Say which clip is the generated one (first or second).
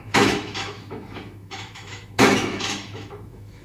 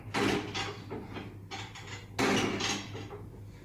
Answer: first